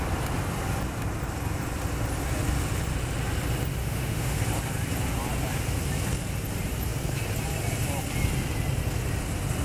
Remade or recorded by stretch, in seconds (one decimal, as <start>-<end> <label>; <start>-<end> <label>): 0.0-3.8 recorded; 3.8-4.4 remade; 4.4-9.6 recorded